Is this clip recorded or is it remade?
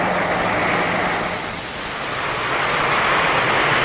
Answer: recorded